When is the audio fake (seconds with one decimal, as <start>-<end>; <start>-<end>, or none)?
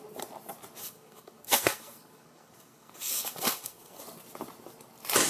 0.8-4.0